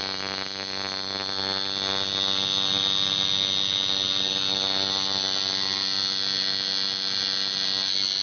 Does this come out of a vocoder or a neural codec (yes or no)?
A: no